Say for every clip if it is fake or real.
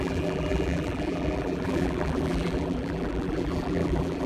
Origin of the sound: fake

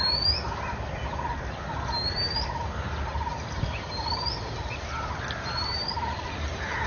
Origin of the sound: real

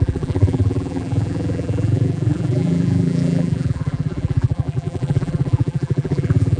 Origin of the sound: fake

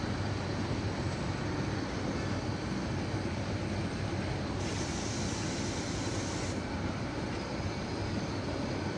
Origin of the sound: real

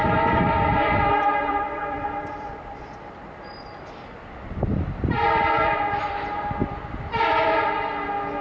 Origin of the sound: fake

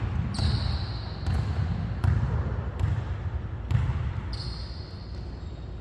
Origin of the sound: real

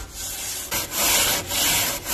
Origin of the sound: real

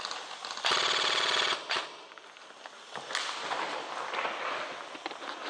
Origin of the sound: real